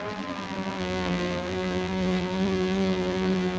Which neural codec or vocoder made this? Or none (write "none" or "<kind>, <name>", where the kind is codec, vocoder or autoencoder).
vocoder, BigVGAN v2